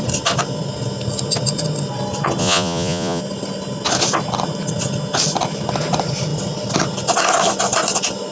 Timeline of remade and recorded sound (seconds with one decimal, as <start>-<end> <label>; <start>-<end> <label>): 0.0-2.4 recorded; 2.4-3.2 remade; 3.2-8.3 recorded